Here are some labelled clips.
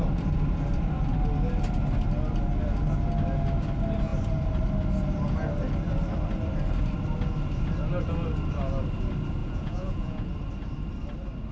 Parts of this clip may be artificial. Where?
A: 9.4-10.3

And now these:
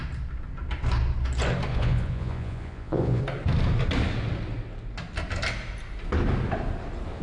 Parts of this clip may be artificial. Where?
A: 1.7-3.2

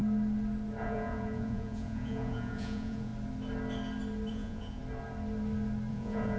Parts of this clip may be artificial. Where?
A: 0.8-3.1; 4.3-4.8; 5.9-6.4

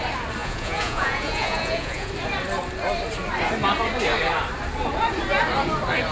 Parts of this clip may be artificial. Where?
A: 0.4-2.1